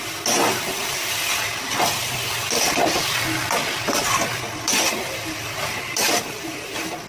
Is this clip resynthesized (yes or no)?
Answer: no